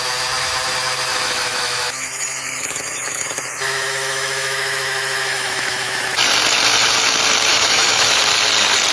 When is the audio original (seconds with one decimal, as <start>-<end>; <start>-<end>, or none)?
0.0-1.1; 6.0-7.5; 8.2-8.9